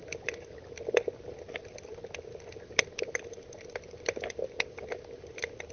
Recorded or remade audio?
recorded